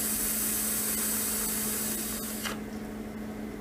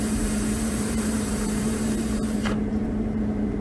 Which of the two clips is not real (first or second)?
second